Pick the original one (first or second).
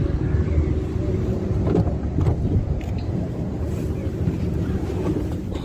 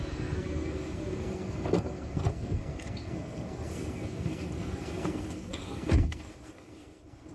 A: first